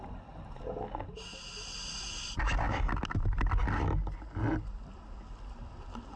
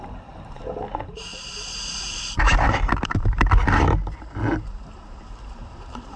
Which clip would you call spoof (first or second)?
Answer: second